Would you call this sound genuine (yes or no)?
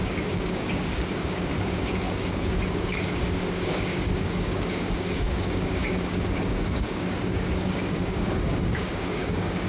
no